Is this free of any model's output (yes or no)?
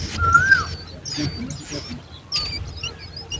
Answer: yes